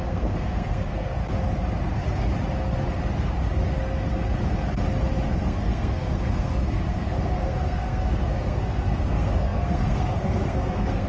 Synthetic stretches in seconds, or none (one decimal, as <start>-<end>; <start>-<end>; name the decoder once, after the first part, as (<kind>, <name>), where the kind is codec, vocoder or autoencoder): 0.0-1.2 (codec, SNAC); 5.3-11.1